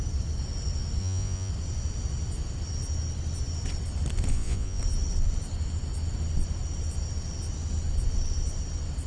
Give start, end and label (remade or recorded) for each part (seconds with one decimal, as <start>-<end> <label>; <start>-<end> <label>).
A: 0.0-1.0 recorded; 1.0-1.5 remade; 1.5-4.3 recorded; 4.3-4.8 remade; 4.8-9.1 recorded